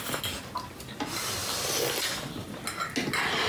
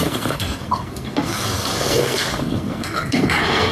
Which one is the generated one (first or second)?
second